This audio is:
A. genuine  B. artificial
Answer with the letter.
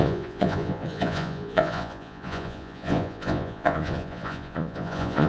B